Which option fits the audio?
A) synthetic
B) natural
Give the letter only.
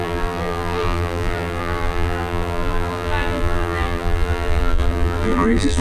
A